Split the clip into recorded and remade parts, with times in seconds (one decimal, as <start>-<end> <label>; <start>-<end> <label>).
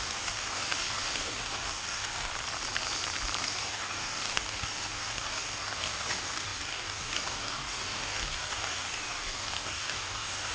0.0-2.3 remade; 2.3-3.4 recorded; 3.4-10.5 remade